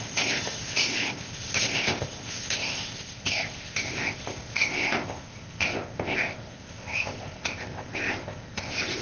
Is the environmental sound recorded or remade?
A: remade